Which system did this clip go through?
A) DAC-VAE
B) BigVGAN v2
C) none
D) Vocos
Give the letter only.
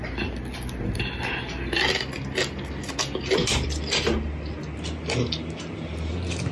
C